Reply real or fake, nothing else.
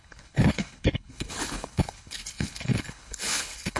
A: fake